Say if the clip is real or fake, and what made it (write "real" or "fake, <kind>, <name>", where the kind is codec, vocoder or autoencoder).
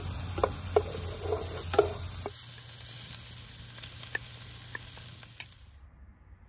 real